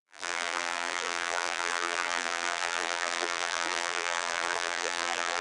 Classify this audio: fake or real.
fake